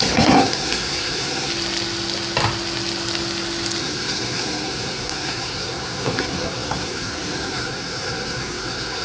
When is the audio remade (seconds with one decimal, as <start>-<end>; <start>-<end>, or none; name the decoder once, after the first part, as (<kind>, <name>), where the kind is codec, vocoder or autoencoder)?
0.0-1.5 (codec, SNAC); 3.8-9.0